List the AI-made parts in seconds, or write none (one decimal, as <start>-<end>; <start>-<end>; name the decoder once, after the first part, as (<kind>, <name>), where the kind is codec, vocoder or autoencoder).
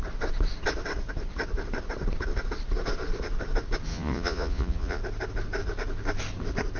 3.9-5.0 (vocoder, Vocos)